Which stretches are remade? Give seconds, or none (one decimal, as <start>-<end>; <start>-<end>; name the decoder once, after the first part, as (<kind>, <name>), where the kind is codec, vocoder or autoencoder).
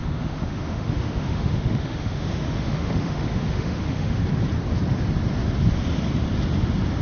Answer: 0.0-4.2 (autoencoder, DAC-VAE)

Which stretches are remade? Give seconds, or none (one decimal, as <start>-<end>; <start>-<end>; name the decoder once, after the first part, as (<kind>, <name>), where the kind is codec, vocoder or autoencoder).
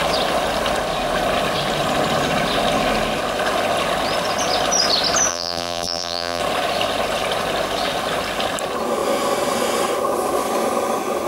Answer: 5.3-6.4 (vocoder, BigVGAN v2)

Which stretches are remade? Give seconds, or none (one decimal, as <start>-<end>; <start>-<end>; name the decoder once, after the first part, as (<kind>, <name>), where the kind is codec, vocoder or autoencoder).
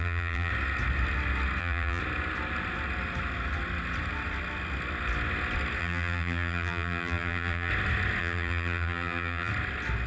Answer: 0.0-0.5 (vocoder, BigVGAN v2); 1.6-2.0; 5.8-7.7; 8.2-9.5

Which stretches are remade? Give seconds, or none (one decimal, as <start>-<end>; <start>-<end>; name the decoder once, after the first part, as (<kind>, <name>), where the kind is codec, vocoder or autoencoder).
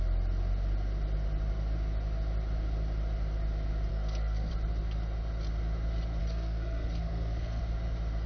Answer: 3.9-4.5 (codec, SNAC); 6.2-7.6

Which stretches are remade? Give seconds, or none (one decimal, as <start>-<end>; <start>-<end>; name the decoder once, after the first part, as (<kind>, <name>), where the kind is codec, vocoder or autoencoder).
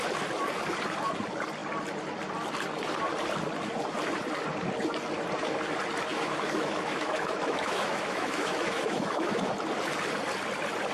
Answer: 6.1-9.5 (autoencoder, DAC-VAE)